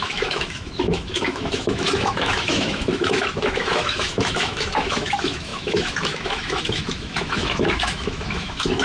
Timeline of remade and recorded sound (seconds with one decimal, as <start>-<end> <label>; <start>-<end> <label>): 0.0-8.8 remade